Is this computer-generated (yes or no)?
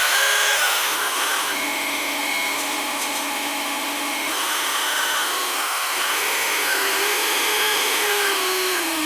yes